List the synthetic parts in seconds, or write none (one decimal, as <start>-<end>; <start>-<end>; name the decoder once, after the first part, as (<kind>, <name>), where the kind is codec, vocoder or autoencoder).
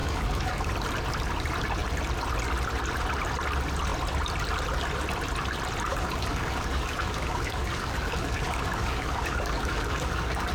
0.0-0.7 (codec, DAC); 5.9-10.5